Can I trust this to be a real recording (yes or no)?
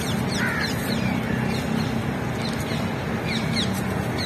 yes